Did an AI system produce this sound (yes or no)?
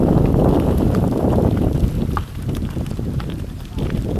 no